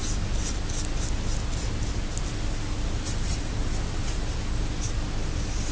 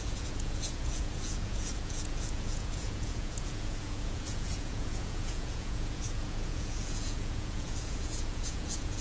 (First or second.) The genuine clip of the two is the first